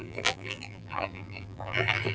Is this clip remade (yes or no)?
yes